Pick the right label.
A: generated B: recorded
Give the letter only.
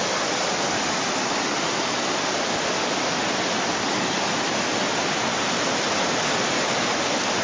B